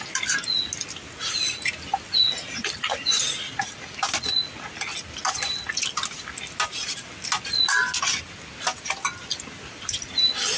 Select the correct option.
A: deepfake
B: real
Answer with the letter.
B